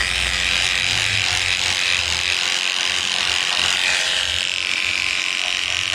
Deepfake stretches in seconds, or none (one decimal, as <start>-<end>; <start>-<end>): none